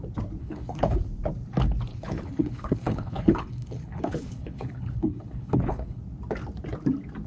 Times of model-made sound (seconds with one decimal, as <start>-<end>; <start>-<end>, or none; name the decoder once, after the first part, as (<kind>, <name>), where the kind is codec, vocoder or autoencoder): 0.4-1.0 (codec, HILCodec); 1.9-6.0